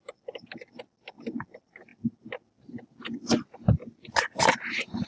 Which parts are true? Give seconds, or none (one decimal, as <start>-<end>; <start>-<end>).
0.0-5.1